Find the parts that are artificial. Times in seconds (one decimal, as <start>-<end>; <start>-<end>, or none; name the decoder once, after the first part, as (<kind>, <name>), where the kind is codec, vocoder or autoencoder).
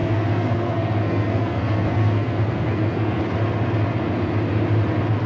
0.0-3.2 (codec, SNAC)